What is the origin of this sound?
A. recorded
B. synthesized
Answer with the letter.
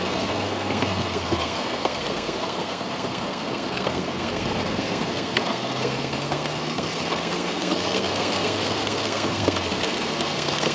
B